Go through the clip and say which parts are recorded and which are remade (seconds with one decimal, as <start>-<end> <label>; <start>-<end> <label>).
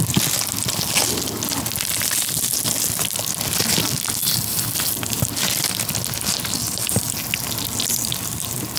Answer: 0.0-8.8 recorded